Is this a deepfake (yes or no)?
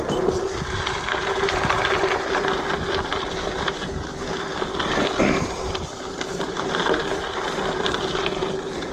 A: no